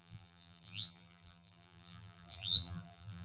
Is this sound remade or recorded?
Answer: remade